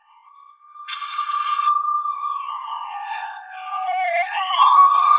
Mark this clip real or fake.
fake